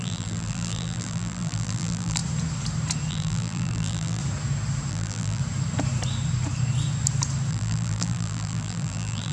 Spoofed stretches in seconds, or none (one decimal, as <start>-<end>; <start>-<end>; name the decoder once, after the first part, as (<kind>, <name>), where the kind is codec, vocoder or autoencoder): 0.0-2.2 (vocoder, BigVGAN v2); 3.1-4.2; 4.9-5.4; 7.5-9.3